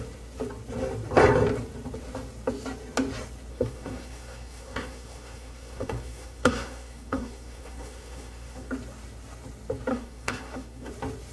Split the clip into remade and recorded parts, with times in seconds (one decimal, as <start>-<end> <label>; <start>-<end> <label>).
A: 0.0-3.5 recorded; 3.5-8.7 remade; 8.7-9.9 recorded; 9.9-10.9 remade; 10.9-11.3 recorded